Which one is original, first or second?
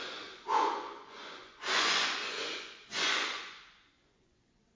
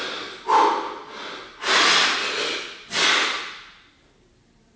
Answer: second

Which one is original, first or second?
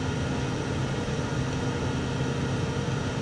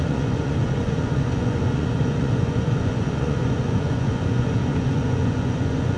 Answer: first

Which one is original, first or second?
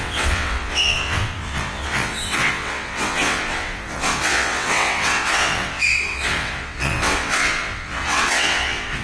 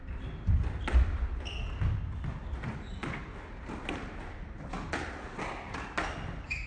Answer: second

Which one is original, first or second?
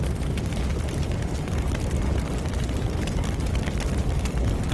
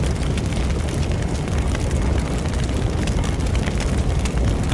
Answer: second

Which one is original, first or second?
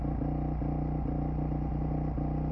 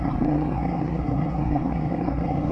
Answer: first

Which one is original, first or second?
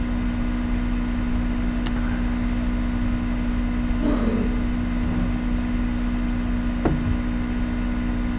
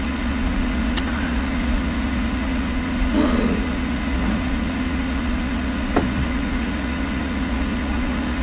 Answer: first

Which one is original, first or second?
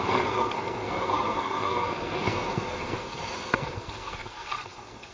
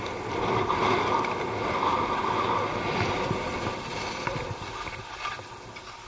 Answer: second